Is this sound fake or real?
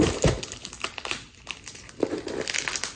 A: real